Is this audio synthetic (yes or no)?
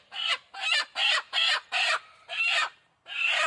yes